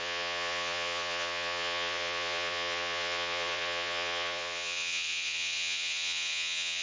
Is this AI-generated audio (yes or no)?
yes